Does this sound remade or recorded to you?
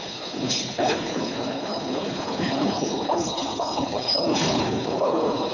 remade